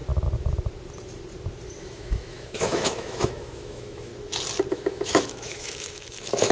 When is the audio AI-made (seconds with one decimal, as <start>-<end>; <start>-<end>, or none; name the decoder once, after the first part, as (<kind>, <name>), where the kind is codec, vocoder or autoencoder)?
1.8-4.1 (autoencoder, DAC-VAE); 4.7-6.5